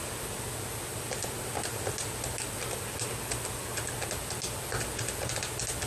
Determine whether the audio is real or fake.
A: real